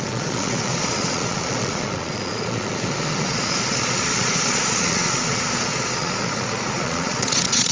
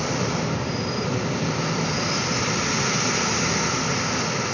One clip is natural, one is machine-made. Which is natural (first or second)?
second